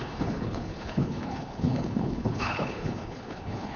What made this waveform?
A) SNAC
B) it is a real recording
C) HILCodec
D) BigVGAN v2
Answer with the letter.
C